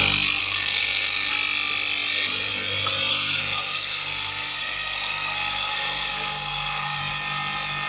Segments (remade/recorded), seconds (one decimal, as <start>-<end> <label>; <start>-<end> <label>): 0.0-0.4 recorded; 0.4-1.3 remade; 1.3-3.1 recorded; 3.1-7.0 remade; 7.0-7.9 recorded